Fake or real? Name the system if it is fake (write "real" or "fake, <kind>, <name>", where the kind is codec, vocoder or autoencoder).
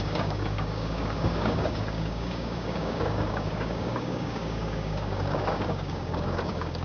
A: fake, codec, DAC